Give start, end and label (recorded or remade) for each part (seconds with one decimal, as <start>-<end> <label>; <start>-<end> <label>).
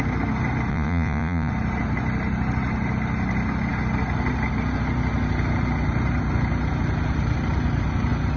0.0-0.7 recorded; 0.7-1.5 remade; 1.5-8.4 recorded